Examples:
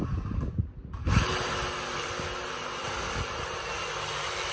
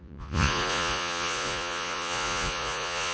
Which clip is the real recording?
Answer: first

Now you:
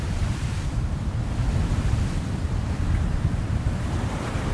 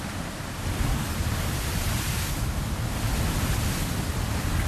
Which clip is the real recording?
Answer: second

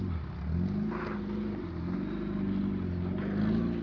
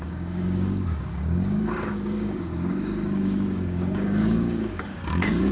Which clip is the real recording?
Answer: first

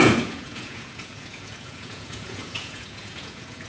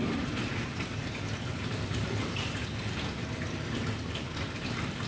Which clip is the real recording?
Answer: second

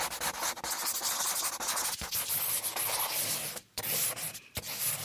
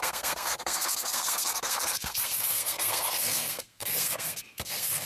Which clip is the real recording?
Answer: first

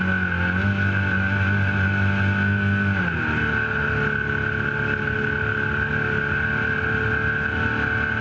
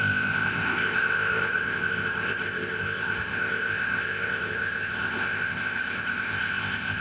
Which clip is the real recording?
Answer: first